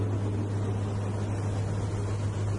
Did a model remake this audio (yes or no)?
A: no